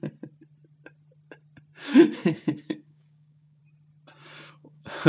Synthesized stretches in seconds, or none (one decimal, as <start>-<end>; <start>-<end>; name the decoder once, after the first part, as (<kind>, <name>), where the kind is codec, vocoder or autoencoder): 1.8-3.6 (codec, DAC); 4.2-5.1